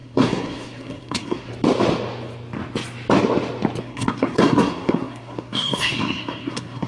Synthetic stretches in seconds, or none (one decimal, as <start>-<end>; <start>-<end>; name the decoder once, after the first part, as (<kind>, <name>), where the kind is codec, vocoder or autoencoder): 0.0-1.5 (codec, SNAC); 3.8-6.9